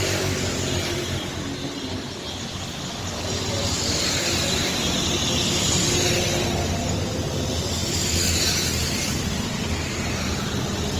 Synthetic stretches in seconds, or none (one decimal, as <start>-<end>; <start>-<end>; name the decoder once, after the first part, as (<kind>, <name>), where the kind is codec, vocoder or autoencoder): 7.8-9.3 (vocoder, BigVGAN v2)

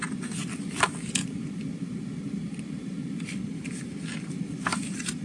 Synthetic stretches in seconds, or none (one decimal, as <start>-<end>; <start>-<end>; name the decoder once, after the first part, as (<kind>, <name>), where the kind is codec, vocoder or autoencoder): none

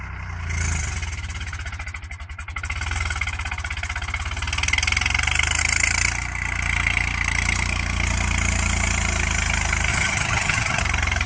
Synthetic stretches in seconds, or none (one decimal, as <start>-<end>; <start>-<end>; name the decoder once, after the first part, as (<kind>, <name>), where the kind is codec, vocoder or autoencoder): 9.9-10.8 (vocoder, HiFi-GAN)

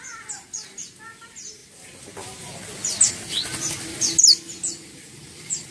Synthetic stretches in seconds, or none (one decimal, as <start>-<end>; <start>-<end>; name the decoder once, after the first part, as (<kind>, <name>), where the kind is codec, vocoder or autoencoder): none

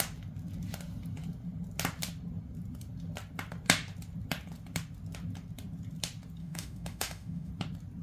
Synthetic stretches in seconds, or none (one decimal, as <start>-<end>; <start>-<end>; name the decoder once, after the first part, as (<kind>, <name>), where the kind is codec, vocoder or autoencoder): 6.4-7.5 (autoencoder, DAC-VAE)

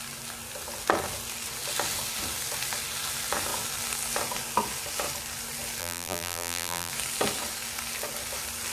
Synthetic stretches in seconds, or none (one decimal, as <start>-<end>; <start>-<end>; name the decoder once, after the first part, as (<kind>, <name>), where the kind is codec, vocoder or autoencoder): 5.8-6.9 (vocoder, BigVGAN v2)